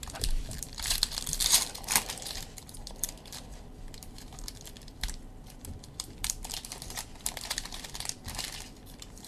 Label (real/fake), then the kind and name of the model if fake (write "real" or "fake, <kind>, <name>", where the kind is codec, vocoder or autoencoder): fake, vocoder, BigVGAN v2